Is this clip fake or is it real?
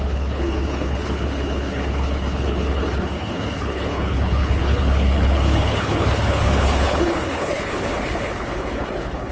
fake